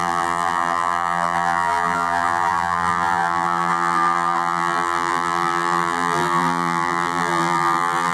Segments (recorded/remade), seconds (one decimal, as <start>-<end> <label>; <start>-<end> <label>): 0.0-8.1 remade